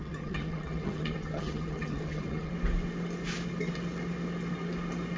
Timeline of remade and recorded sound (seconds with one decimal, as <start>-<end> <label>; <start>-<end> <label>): 0.0-2.5 remade; 2.5-5.2 recorded